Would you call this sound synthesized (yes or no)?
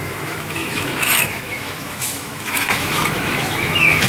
yes